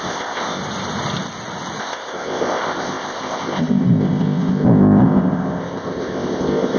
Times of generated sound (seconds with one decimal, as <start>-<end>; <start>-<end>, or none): 0.0-0.6; 1.8-6.8

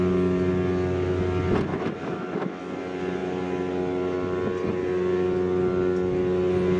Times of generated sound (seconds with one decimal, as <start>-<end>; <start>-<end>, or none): 1.7-2.6

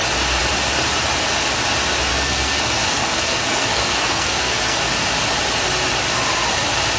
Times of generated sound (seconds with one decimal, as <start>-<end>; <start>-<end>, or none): 2.1-4.8